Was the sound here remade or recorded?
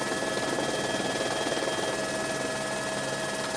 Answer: recorded